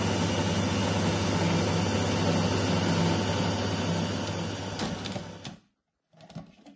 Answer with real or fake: real